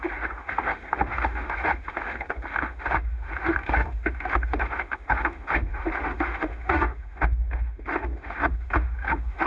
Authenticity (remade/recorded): remade